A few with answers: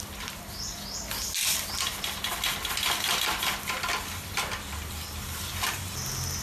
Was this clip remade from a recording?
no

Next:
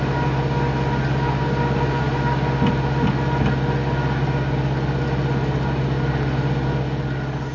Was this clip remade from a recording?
no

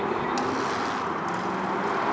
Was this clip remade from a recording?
no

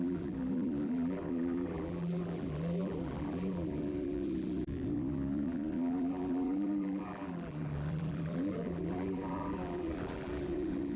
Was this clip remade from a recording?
yes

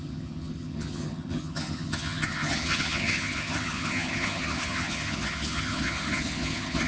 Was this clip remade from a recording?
yes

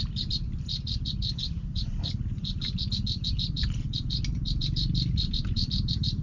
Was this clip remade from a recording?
no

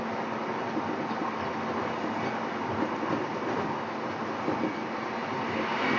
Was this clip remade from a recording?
no